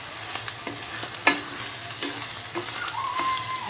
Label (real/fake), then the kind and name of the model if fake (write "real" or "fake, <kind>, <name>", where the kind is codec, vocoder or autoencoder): real